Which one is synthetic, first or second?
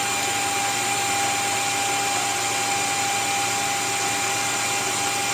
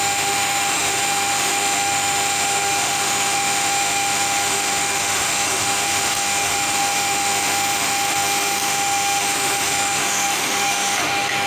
second